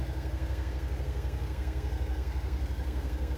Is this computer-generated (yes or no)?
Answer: yes